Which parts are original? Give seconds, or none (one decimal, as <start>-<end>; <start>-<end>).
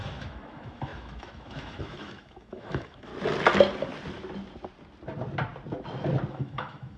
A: 3.1-6.3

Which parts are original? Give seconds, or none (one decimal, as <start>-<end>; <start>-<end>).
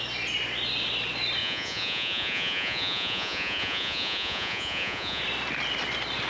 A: 0.0-1.4; 5.2-6.3